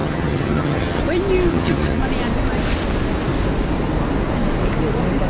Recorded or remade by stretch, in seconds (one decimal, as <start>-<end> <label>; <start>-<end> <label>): 0.0-1.0 remade; 1.0-1.5 recorded; 1.5-2.0 remade; 2.0-5.3 recorded